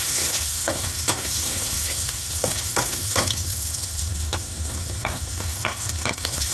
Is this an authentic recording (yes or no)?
no